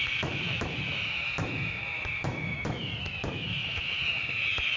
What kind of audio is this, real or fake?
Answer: fake